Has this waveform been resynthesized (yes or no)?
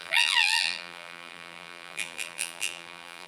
yes